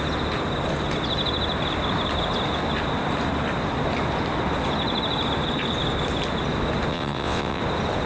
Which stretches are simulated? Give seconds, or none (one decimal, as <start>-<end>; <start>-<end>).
6.9-7.6